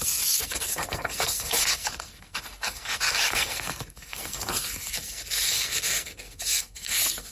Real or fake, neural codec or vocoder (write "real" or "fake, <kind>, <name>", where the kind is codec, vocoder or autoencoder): fake, codec, SNAC